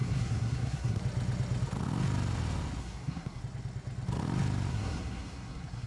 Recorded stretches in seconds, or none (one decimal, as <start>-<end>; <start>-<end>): 1.0-2.8; 3.4-4.7